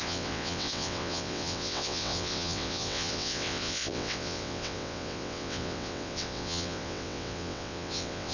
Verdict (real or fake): fake